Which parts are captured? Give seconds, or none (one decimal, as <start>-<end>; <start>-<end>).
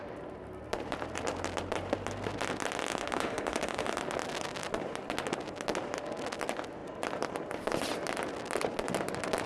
0.0-2.9; 4.0-9.5